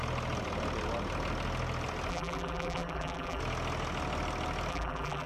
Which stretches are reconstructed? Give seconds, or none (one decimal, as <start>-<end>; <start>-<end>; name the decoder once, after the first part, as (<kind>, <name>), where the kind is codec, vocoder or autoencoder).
2.1-3.4 (vocoder, BigVGAN v2); 4.7-5.3